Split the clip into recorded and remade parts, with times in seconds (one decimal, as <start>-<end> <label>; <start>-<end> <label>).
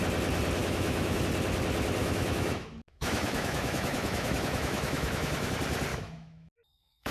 0.0-0.6 recorded; 0.6-1.2 remade; 1.2-2.0 recorded; 2.0-5.5 remade; 5.5-5.9 recorded; 5.9-7.1 remade